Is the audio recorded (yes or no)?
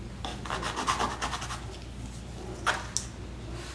yes